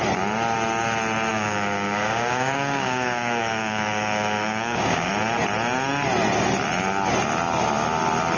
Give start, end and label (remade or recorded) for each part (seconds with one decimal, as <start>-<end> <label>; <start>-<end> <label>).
0.0-1.3 recorded; 1.3-5.1 remade; 5.1-8.4 recorded